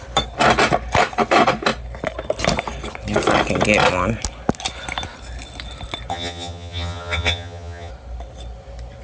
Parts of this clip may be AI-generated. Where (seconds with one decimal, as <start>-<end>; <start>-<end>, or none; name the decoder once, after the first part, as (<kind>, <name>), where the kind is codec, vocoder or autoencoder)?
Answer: 6.1-7.9 (vocoder, HiFi-GAN)

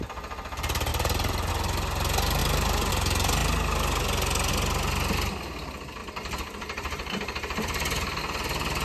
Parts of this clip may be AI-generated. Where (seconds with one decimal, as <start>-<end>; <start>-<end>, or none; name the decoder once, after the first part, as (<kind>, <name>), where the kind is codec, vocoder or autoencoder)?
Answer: 0.9-1.5 (vocoder, BigVGAN v2); 2.4-2.9; 6.0-8.2

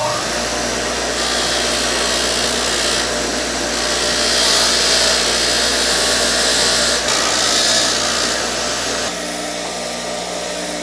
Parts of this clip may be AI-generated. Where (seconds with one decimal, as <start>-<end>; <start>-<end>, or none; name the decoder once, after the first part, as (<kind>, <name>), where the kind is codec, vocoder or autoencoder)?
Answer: none

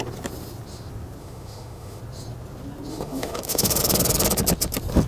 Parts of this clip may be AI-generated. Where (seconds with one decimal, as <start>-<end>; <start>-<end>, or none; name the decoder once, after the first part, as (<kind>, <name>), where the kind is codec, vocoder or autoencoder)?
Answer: 1.2-2.0 (autoencoder, DAC-VAE); 2.9-3.8

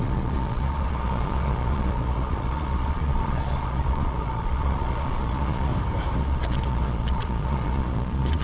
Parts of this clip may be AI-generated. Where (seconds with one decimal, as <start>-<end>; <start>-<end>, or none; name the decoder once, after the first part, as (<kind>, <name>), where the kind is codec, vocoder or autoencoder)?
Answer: 0.0-5.7 (vocoder, Vocos); 6.2-8.4

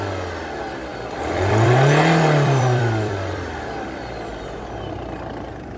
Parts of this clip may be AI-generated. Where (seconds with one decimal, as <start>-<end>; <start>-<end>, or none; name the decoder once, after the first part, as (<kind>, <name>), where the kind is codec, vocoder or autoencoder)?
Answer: 0.9-4.4 (vocoder, BigVGAN v2)